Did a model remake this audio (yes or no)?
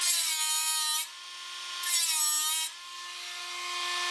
no